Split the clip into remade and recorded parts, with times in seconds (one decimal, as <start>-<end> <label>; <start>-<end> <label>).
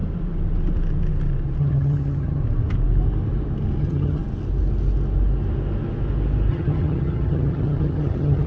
0.0-1.6 recorded; 1.6-2.4 remade; 2.4-3.8 recorded; 3.8-4.2 remade; 4.2-6.5 recorded; 6.5-8.5 remade